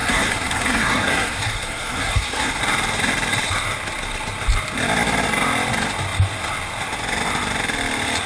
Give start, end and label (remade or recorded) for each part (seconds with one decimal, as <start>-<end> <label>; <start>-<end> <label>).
0.0-2.6 remade; 2.6-8.3 recorded